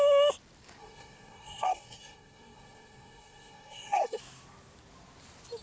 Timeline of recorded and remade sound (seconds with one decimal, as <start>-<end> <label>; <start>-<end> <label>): 0.0-0.8 recorded; 0.8-4.2 remade; 4.2-5.6 recorded